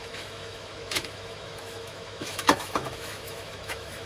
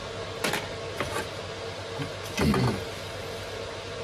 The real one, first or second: second